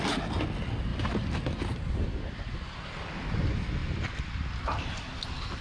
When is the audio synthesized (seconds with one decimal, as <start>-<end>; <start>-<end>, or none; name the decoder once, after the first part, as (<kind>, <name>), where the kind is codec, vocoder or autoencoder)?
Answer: none